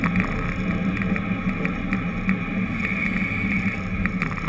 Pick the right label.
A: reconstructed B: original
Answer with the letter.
B